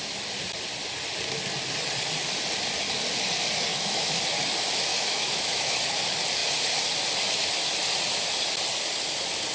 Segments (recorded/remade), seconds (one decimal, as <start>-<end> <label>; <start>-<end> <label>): 0.0-3.7 recorded; 3.7-4.2 remade; 4.2-4.9 recorded; 4.9-5.8 remade; 5.8-9.5 recorded

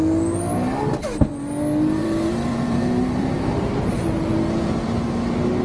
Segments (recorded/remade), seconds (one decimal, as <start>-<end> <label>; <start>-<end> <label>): 0.0-2.0 recorded; 2.0-3.7 remade; 3.7-5.6 recorded

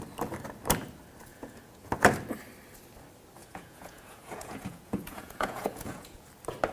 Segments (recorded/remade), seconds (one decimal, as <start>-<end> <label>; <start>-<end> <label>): 0.0-1.3 recorded; 1.3-1.9 remade; 1.9-3.4 recorded; 3.4-6.3 remade; 6.3-6.7 recorded

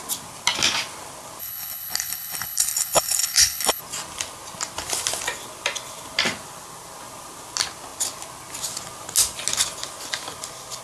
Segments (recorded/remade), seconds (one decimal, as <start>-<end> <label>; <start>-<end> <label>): 0.0-1.4 recorded; 1.4-3.8 remade; 3.8-10.8 recorded